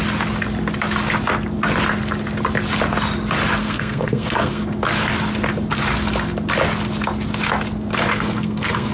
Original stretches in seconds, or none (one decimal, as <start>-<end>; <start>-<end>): 0.0-3.6; 4.6-8.1